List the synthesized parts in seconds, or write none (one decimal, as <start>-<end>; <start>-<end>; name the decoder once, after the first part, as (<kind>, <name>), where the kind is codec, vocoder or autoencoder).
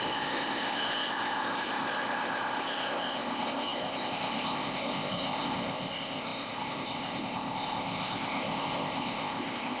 0.0-9.8 (codec, ZipCodec)